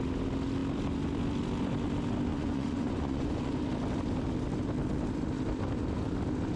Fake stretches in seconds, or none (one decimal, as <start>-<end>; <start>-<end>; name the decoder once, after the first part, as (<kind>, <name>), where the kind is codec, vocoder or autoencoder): 2.3-3.6 (vocoder, Vocos)